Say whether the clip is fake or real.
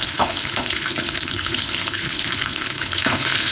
fake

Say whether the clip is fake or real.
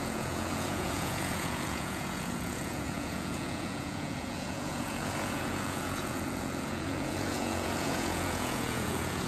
fake